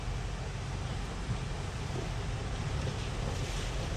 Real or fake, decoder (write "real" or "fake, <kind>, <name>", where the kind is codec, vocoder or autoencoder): real